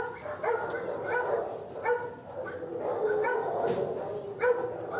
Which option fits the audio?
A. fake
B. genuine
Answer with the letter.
B